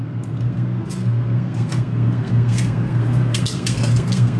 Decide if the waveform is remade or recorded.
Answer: remade